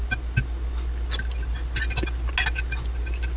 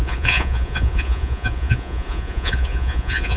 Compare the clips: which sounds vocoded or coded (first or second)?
second